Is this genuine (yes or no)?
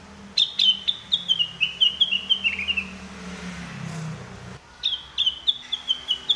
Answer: yes